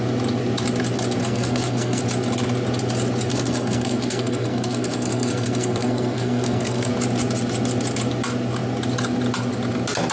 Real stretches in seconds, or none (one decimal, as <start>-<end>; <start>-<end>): 0.0-1.2; 2.0-3.3; 6.9-10.1